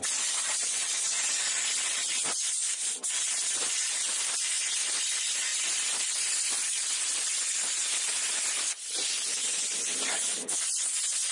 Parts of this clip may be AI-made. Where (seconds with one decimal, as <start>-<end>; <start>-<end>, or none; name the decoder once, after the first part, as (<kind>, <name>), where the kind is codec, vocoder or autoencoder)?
none